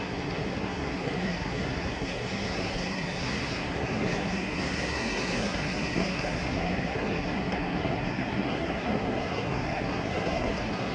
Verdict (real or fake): fake